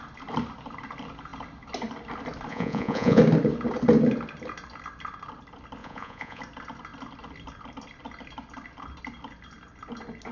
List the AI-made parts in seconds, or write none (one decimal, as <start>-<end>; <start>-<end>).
2.5-3.2; 5.8-6.4